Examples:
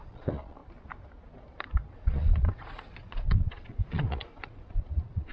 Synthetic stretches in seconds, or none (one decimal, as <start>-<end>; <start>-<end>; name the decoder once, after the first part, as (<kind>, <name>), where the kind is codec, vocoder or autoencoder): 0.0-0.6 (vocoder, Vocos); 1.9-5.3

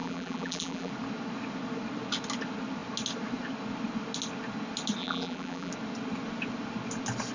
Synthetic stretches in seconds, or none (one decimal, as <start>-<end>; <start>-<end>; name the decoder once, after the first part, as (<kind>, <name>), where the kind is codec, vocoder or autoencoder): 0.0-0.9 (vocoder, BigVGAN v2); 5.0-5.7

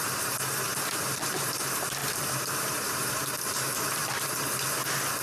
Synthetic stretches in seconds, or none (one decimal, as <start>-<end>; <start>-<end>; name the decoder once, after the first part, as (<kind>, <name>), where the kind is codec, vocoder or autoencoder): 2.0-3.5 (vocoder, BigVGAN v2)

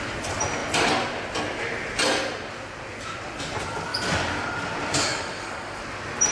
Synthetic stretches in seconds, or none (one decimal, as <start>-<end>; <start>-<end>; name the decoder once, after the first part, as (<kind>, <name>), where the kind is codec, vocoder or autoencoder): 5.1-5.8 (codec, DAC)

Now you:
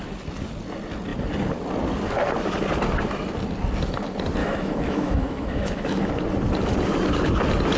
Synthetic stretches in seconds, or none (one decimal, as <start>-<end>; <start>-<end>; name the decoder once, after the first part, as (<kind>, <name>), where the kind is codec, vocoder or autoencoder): 4.4-6.1 (autoencoder, DAC-VAE)

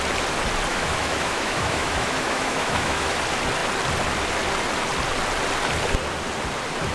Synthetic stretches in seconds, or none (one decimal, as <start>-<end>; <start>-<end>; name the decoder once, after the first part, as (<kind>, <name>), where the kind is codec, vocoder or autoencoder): 0.7-3.2 (autoencoder, DAC-VAE)